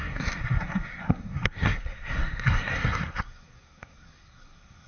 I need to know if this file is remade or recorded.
remade